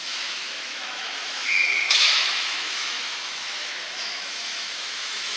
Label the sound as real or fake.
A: fake